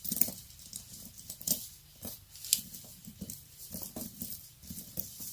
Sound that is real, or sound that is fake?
real